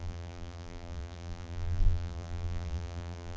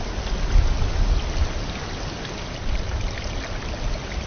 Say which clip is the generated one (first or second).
first